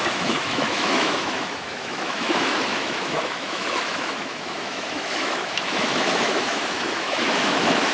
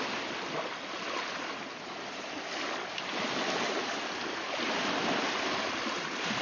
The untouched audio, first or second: second